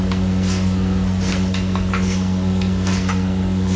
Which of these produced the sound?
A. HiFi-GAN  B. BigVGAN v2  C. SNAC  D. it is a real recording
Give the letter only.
C